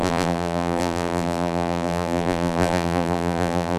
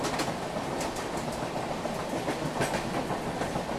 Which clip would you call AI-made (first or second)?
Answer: first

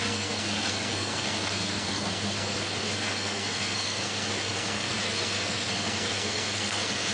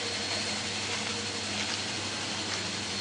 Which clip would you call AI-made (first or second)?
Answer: first